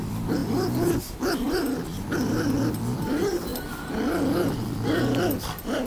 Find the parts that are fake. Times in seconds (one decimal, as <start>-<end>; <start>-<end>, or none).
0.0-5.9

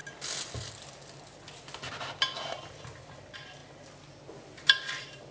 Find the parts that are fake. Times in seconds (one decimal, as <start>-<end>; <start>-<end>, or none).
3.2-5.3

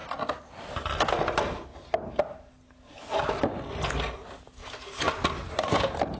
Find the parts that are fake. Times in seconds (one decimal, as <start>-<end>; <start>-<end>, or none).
1.2-1.7; 2.9-4.6; 5.5-6.2

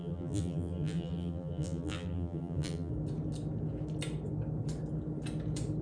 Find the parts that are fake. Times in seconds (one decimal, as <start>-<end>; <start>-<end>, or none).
0.0-2.9